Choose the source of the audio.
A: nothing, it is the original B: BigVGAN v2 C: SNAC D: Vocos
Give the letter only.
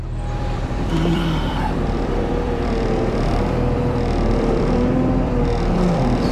B